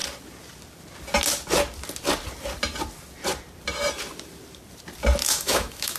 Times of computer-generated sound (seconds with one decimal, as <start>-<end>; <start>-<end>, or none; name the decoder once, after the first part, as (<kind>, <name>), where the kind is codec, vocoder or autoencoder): 5.2-6.0 (autoencoder, DAC-VAE)